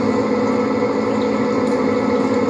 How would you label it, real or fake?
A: real